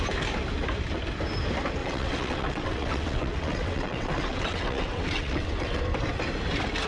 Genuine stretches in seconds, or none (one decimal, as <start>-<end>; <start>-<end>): 0.0-1.8; 5.8-6.9